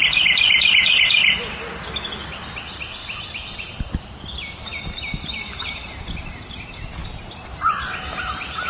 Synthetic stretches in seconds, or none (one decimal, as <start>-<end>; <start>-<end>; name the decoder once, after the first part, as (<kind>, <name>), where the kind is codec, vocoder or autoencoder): 3.0-3.9 (vocoder, BigVGAN v2); 4.7-5.9